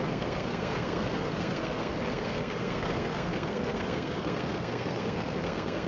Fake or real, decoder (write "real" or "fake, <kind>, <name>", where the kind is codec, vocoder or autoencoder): fake, codec, SNAC